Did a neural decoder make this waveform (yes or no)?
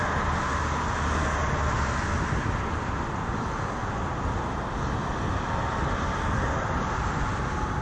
no